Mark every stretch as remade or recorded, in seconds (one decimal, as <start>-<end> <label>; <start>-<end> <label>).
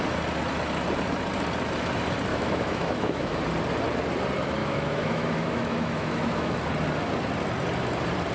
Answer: 0.0-2.3 recorded; 2.3-3.4 remade; 3.4-4.6 recorded; 4.6-6.6 remade; 6.6-8.3 recorded